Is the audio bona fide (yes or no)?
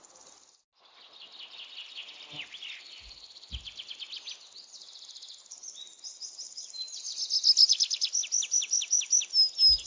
yes